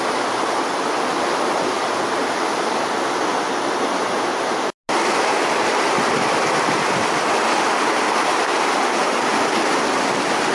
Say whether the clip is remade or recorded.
recorded